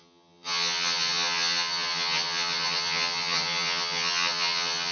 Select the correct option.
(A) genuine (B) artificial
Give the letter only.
B